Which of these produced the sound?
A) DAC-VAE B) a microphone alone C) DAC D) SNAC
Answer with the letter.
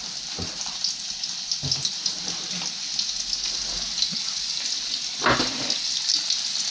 B